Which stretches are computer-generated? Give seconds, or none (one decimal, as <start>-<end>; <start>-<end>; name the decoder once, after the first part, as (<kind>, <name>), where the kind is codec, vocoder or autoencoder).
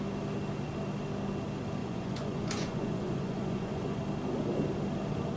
1.8-4.0 (vocoder, Vocos)